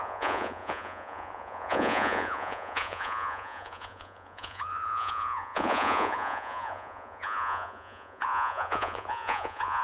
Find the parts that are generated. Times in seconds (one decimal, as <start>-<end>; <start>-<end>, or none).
0.0-9.8